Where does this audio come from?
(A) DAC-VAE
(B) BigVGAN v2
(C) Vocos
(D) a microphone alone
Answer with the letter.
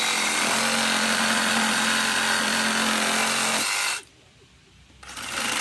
D